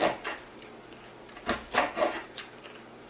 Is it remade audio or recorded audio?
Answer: recorded